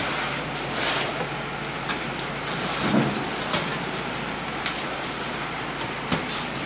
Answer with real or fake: real